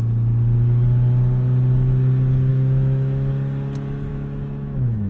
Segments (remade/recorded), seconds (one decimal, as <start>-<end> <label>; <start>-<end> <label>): 0.0-2.5 recorded; 2.5-3.3 remade; 3.3-4.1 recorded; 4.1-5.1 remade